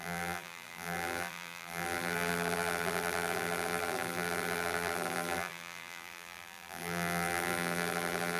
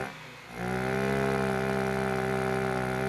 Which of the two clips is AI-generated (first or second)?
first